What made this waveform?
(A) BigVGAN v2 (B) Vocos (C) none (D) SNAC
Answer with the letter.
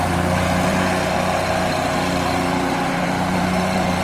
A